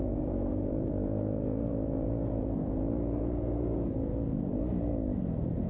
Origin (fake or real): fake